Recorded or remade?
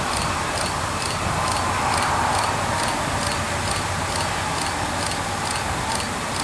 recorded